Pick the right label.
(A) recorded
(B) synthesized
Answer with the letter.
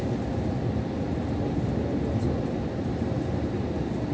A